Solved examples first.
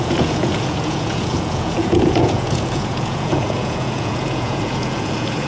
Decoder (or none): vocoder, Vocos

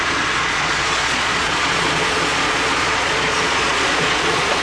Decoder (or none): vocoder, Vocos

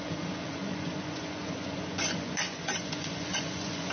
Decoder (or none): vocoder, Vocos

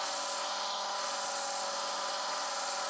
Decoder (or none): none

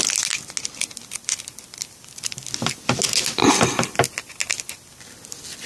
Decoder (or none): none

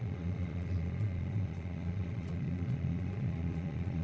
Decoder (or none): vocoder, Vocos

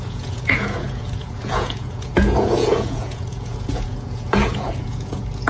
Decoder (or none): vocoder, Vocos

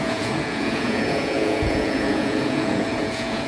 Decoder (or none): vocoder, Vocos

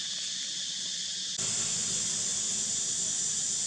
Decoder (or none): none